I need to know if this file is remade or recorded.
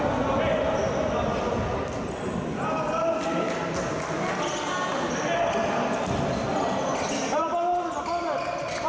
recorded